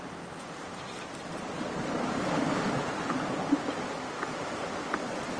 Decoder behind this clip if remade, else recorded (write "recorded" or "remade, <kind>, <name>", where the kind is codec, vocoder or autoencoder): recorded